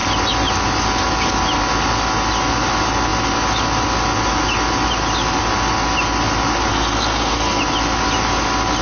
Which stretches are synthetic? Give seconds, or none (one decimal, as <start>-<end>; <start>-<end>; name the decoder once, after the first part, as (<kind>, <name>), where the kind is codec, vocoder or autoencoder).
6.7-7.6 (codec, SNAC)